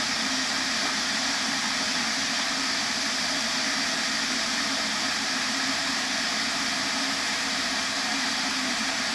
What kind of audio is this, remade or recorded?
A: remade